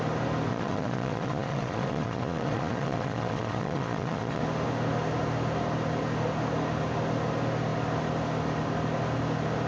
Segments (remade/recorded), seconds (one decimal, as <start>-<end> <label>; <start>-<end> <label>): 0.0-0.5 recorded; 0.5-4.4 remade; 4.4-9.7 recorded